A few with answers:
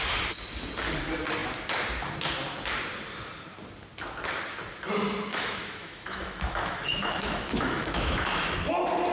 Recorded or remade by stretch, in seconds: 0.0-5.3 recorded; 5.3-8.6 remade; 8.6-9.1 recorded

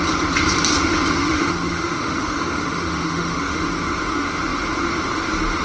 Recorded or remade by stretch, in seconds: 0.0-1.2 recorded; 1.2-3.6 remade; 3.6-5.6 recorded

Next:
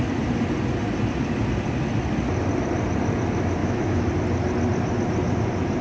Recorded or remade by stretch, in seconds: 0.0-3.6 recorded; 3.6-4.1 remade; 4.1-5.8 recorded

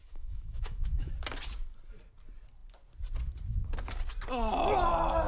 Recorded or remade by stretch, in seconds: 0.0-1.1 remade; 1.1-5.3 recorded

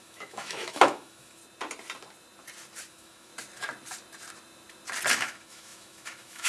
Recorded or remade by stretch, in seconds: 0.0-1.4 remade; 1.4-2.9 recorded; 2.9-3.3 remade; 3.3-5.1 recorded; 5.1-6.5 remade

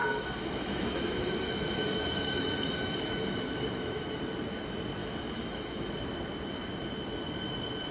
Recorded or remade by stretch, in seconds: 0.0-4.2 remade; 4.2-5.0 recorded; 5.0-5.9 remade; 5.9-7.9 recorded

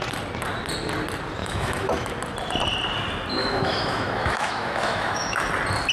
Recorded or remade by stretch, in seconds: 0.0-1.4 recorded; 1.4-2.1 remade; 2.1-3.4 recorded; 3.4-5.5 remade; 5.5-5.9 recorded